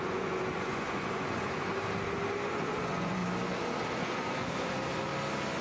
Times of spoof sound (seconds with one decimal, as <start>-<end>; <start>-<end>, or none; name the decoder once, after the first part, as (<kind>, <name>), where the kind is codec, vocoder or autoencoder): 0.0-1.7 (vocoder, Vocos); 2.5-3.2; 4.0-5.1